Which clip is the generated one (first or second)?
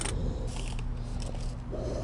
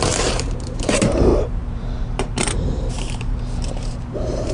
second